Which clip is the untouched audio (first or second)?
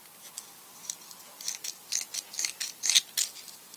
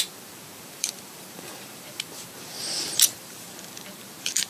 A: first